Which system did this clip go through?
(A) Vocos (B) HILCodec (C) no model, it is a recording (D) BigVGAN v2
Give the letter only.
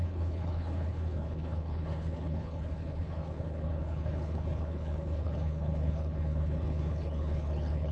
B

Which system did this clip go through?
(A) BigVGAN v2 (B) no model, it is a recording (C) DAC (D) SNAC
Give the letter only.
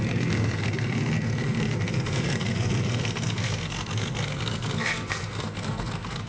D